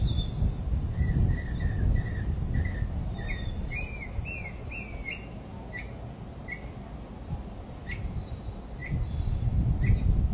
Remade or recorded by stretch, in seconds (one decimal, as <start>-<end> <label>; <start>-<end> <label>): 0.0-10.3 recorded